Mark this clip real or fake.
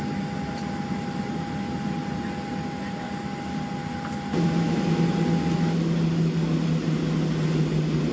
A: real